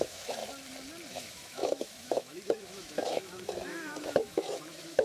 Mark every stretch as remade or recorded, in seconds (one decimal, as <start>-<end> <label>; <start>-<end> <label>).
0.0-0.4 remade; 0.4-1.1 recorded; 1.1-5.0 remade